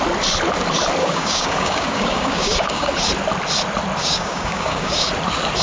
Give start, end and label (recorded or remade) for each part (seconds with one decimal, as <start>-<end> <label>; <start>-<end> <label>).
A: 0.0-1.0 recorded; 1.0-2.9 remade; 2.9-4.0 recorded; 4.0-5.1 remade; 5.1-5.6 recorded